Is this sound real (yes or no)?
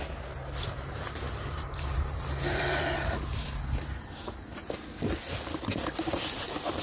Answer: yes